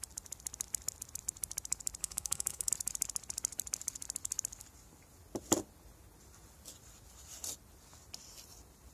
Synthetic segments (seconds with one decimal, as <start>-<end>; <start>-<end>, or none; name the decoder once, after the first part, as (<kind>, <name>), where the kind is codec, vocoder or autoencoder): 2.0-2.7 (codec, SNAC)